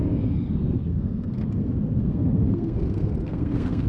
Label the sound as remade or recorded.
remade